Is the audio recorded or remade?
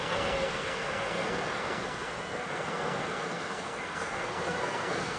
remade